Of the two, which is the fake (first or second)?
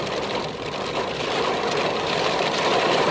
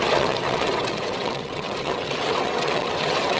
second